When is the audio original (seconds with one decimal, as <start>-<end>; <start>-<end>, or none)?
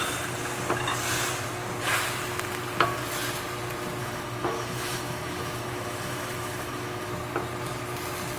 0.0-4.0; 7.1-8.4